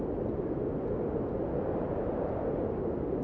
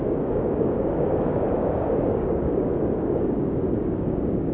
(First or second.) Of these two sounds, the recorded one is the first